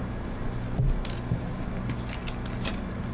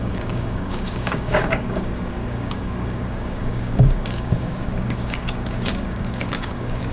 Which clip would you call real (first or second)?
first